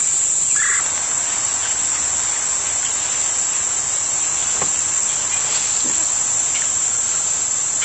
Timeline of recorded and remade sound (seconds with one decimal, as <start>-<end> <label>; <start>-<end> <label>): 0.0-7.8 recorded